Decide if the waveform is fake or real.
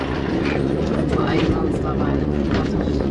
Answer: fake